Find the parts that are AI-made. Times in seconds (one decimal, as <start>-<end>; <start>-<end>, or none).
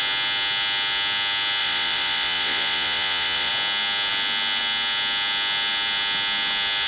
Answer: 1.6-3.5